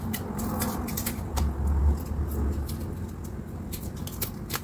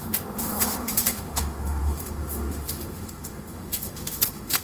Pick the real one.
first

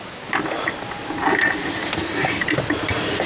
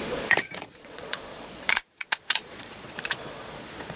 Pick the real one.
first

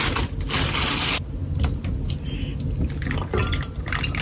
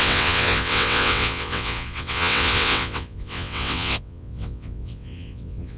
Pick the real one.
first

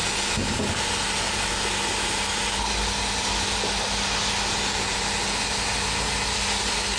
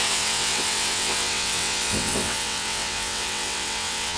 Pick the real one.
first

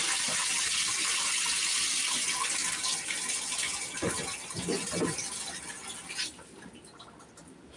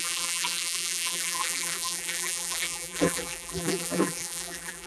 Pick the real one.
first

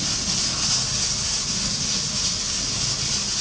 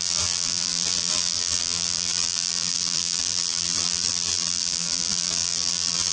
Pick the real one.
first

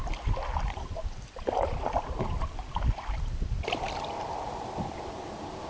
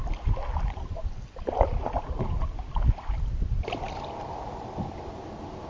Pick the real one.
second